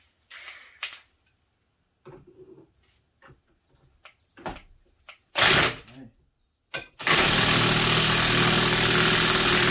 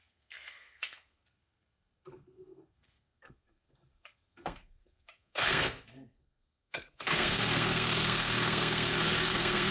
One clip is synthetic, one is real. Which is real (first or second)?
first